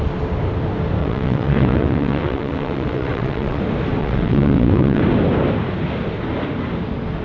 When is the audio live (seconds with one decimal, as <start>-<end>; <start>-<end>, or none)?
0.0-1.0; 3.6-4.0; 5.0-7.2